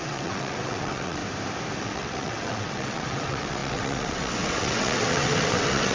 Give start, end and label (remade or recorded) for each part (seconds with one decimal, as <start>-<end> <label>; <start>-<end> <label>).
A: 0.0-1.2 remade; 1.2-1.8 recorded; 1.8-5.9 remade